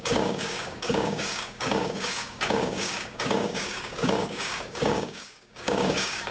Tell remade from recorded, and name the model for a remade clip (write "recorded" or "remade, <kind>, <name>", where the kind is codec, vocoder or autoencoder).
remade, codec, DAC